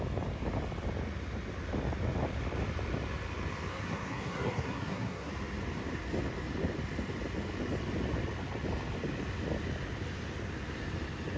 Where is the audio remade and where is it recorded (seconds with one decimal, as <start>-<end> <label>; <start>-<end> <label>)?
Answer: 0.0-3.7 recorded; 3.7-5.3 remade; 5.3-11.4 recorded